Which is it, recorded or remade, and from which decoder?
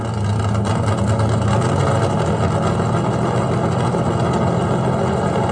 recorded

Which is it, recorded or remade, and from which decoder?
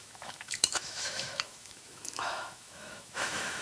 remade, autoencoder, DAC-VAE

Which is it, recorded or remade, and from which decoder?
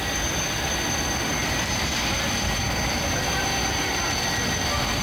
recorded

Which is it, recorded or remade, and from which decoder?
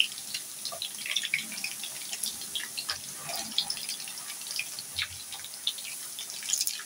recorded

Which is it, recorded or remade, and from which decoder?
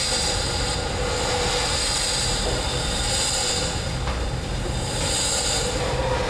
recorded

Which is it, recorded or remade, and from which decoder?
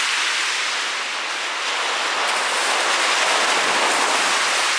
recorded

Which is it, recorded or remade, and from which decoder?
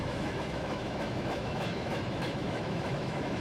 remade, autoencoder, DAC-VAE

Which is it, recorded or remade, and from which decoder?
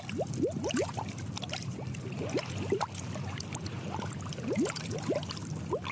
recorded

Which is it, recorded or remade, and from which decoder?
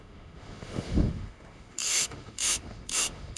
remade, autoencoder, DAC-VAE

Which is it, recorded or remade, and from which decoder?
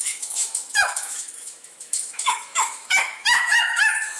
remade, autoencoder, DAC-VAE